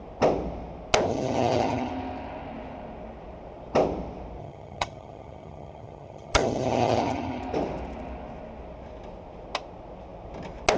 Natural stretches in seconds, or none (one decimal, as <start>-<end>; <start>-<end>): 0.0-1.1; 1.9-4.4; 7.4-10.8